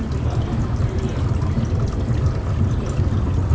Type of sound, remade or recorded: recorded